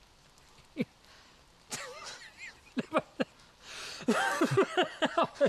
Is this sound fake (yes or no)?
no